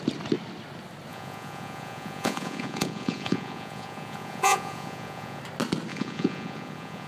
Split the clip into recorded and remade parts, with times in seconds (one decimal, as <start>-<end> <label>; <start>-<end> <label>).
0.0-1.1 recorded; 1.1-5.4 remade; 5.4-5.9 recorded; 5.9-7.1 remade